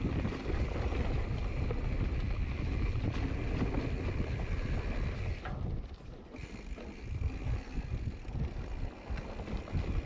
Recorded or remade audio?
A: recorded